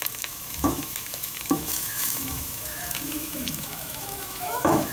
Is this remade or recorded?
remade